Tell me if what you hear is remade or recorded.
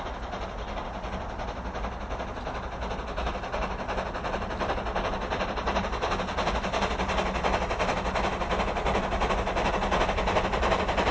recorded